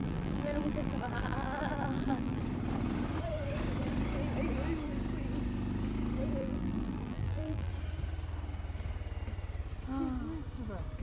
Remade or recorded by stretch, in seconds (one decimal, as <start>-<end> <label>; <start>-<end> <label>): 0.0-2.4 remade; 2.4-6.4 recorded; 6.4-7.7 remade; 7.7-11.0 recorded